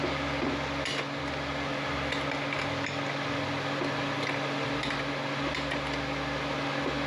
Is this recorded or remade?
recorded